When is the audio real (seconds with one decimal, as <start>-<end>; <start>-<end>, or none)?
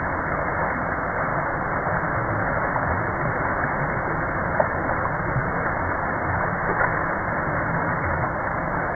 0.0-4.7; 5.9-9.0